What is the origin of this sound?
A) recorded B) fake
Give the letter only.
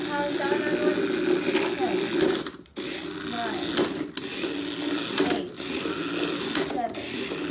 A